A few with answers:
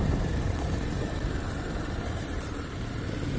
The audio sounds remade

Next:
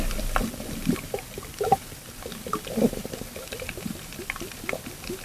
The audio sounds remade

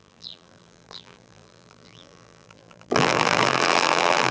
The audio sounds remade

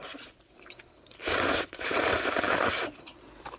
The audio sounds remade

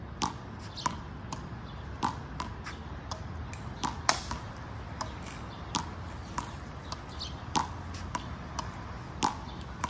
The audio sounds recorded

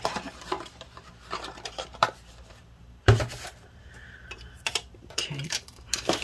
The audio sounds remade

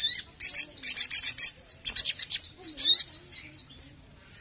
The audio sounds remade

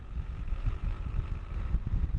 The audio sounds remade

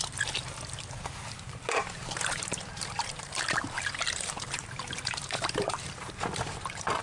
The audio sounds remade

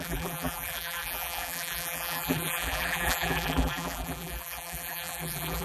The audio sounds remade